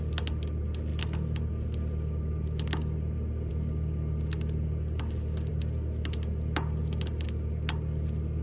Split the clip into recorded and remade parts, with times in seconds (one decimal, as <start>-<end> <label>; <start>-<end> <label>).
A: 0.0-8.4 recorded